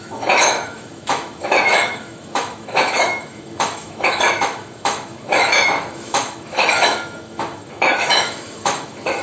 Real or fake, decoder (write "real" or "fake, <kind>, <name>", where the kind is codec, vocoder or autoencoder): fake, autoencoder, DAC-VAE